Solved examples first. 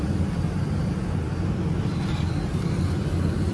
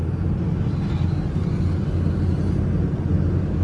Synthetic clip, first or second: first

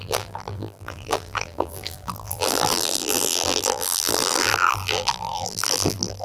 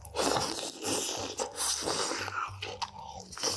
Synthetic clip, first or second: first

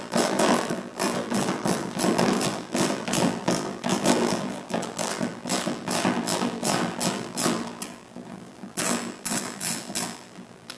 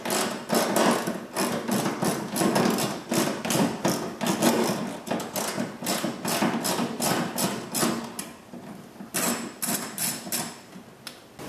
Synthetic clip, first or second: first